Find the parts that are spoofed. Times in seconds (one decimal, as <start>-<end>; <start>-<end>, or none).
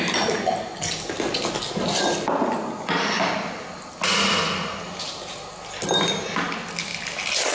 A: none